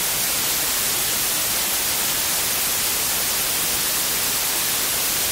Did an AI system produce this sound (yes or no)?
no